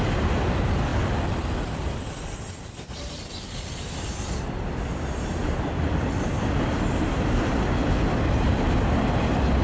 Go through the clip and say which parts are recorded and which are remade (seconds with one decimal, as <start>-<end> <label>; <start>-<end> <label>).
0.0-0.9 recorded; 0.9-5.9 remade; 5.9-9.6 recorded